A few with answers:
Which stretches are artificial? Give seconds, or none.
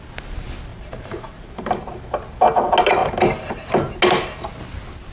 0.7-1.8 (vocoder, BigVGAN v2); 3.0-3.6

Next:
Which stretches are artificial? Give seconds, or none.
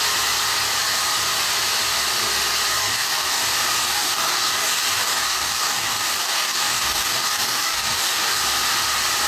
2.8-3.4 (codec, DAC); 3.8-8.4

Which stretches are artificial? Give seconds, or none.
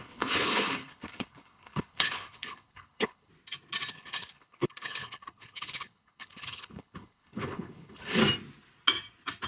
0.0-3.3 (codec, HILCodec); 3.9-8.2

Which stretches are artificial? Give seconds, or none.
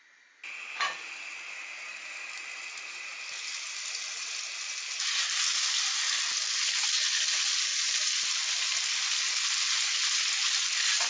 none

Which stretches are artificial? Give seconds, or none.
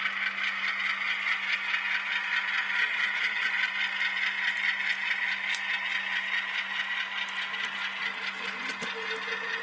2.8-3.5 (vocoder, HiFi-GAN)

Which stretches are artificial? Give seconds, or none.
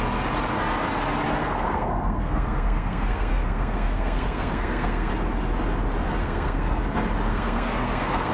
1.4-5.1 (codec, SNAC); 6.2-6.8; 7.3-8.3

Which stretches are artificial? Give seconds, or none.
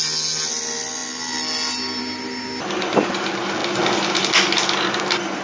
none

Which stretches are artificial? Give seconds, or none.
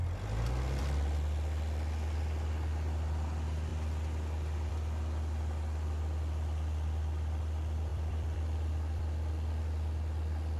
7.9-9.0 (vocoder, BigVGAN v2)